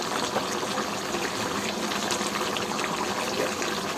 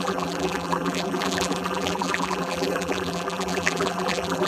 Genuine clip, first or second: first